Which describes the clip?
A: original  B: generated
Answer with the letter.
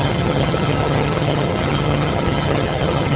B